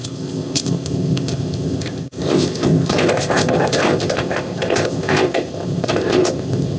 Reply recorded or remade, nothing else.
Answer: remade